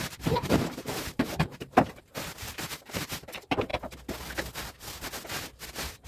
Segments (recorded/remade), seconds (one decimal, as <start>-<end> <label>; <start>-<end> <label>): 0.0-3.7 remade; 3.7-6.1 recorded